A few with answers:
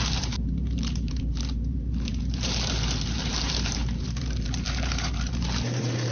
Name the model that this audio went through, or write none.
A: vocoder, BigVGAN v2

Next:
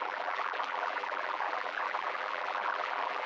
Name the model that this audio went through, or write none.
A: vocoder, BigVGAN v2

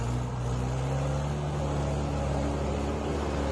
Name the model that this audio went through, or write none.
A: none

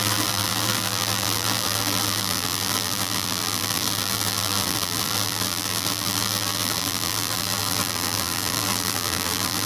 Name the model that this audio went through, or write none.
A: vocoder, BigVGAN v2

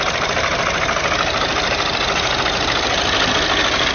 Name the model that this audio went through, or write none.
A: none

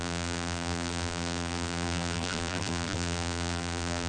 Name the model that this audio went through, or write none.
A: vocoder, BigVGAN v2